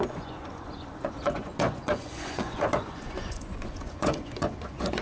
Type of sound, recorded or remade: remade